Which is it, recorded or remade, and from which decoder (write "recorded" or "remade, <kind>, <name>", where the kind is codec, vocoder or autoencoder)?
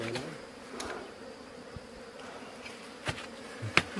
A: remade, vocoder, BigVGAN v2